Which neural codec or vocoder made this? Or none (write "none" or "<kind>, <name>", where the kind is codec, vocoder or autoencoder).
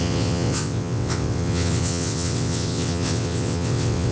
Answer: vocoder, WaveNeXt